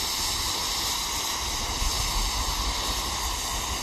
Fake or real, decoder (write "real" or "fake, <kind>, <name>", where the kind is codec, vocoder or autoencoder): real